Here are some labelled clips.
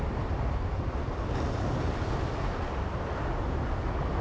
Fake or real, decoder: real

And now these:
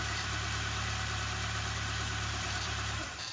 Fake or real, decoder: fake, vocoder, BigVGAN v2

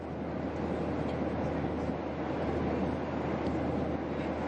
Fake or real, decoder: real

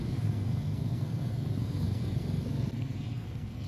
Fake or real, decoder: fake, codec, SNAC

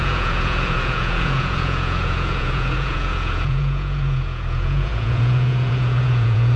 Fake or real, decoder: fake, vocoder, Vocos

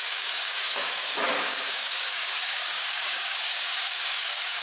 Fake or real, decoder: fake, codec, DAC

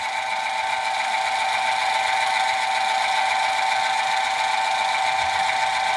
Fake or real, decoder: real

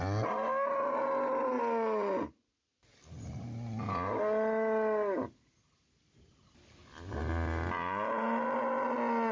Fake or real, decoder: real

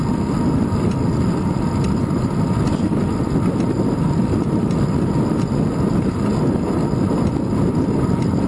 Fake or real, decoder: real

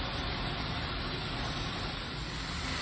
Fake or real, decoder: real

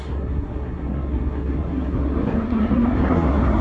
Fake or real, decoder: fake, codec, SNAC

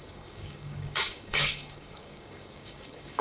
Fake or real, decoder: fake, codec, DAC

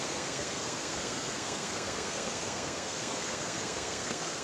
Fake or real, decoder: fake, codec, SNAC